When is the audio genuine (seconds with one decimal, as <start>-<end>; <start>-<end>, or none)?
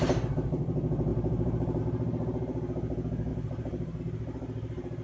0.0-1.1; 1.8-3.3; 4.0-5.0